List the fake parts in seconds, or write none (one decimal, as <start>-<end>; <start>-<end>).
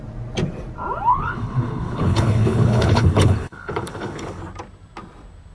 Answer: 1.1-4.4